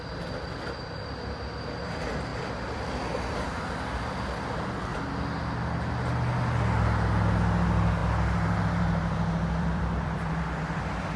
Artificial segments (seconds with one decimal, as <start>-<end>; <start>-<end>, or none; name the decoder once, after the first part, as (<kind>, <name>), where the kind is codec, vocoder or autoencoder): 2.3-3.2 (vocoder, BigVGAN v2); 8.0-11.2